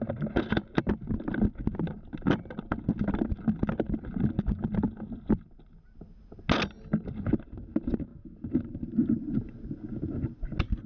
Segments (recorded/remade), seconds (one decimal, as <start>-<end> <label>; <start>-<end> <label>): 0.0-10.9 recorded